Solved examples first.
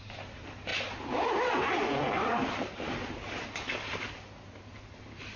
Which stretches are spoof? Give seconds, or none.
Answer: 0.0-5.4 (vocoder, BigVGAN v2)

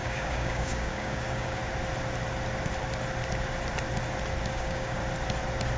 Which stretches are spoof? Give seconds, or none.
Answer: 0.0-1.6 (codec, DAC); 4.5-5.0

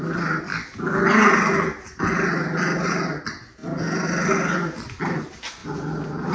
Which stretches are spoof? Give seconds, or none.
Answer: 5.6-6.3 (vocoder, BigVGAN v2)

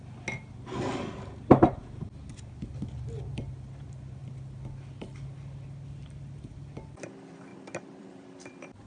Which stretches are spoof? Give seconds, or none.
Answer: 7.5-8.9 (vocoder, BigVGAN v2)

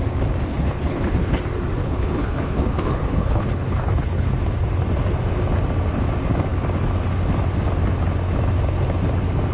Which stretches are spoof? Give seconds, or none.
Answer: 0.5-1.4 (codec, HILCodec); 1.8-4.3

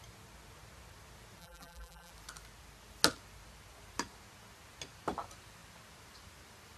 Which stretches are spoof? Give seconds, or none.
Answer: 1.4-2.1 (vocoder, BigVGAN v2)

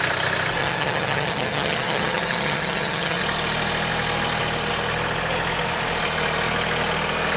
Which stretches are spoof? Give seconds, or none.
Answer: 0.6-3.2 (vocoder, HiFi-GAN)

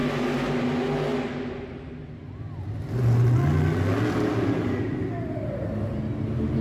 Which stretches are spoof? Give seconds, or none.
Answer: none